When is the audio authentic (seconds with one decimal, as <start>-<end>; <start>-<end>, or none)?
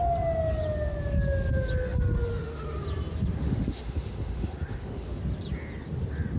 0.0-2.3; 2.8-3.4; 5.2-6.4